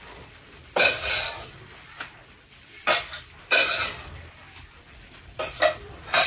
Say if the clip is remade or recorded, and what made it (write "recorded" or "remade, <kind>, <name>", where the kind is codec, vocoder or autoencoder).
remade, vocoder, BigVGAN v2